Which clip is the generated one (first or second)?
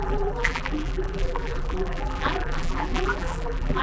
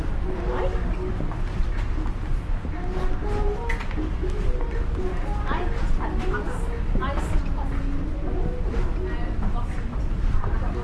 first